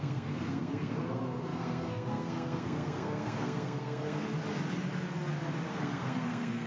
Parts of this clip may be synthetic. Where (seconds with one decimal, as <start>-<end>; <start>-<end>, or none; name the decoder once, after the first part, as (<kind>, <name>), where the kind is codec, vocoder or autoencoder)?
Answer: 0.0-4.3 (codec, SNAC); 5.7-6.7